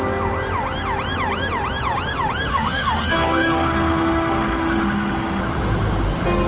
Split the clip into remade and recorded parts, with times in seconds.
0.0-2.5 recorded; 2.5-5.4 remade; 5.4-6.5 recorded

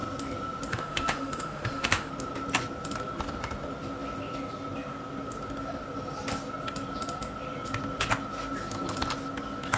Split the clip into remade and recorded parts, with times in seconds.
0.0-0.7 recorded; 0.7-2.1 remade; 2.1-9.8 recorded

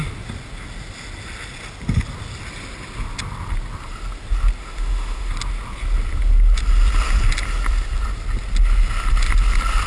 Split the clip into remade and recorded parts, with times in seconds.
0.0-4.6 recorded; 4.6-5.3 remade; 5.3-9.9 recorded

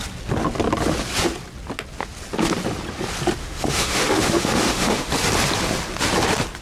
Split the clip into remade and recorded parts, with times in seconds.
0.0-3.4 recorded; 3.4-5.1 remade; 5.1-6.6 recorded

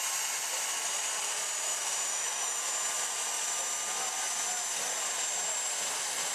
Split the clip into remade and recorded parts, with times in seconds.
0.0-2.1 recorded; 2.1-2.6 remade; 2.6-6.3 recorded

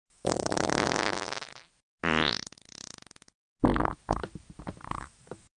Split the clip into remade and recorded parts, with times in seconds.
0.0-1.5 remade; 1.5-4.9 recorded; 4.9-5.6 remade

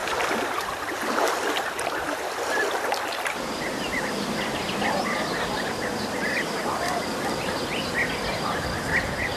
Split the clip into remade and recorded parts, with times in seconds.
0.0-9.4 recorded

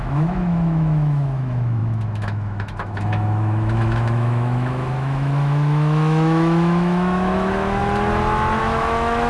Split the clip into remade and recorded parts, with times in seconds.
0.0-7.8 remade; 7.8-8.6 recorded; 8.6-9.3 remade